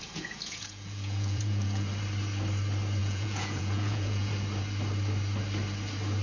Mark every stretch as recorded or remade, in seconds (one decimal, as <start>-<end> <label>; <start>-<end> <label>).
0.0-1.9 remade; 1.9-3.0 recorded; 3.0-4.3 remade; 4.3-6.2 recorded